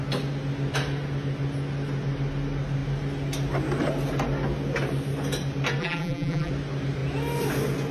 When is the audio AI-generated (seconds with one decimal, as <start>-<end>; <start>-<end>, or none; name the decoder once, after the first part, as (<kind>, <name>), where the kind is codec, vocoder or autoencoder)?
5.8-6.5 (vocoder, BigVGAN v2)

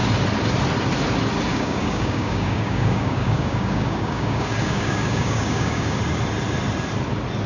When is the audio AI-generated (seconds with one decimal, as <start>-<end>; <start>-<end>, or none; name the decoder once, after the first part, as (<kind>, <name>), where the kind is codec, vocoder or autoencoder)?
1.5-6.0 (codec, DAC)

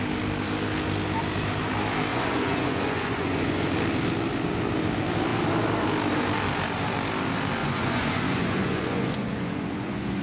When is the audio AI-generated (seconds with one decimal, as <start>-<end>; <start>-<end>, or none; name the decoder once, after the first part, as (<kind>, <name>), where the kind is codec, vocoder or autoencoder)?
2.1-3.7 (vocoder, Vocos); 7.6-10.2